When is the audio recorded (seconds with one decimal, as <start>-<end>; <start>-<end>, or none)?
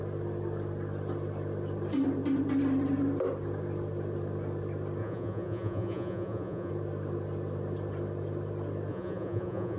0.0-5.0; 6.7-8.9